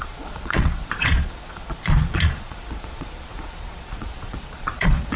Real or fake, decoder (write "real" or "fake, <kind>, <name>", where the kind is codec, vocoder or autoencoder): fake, vocoder, Vocos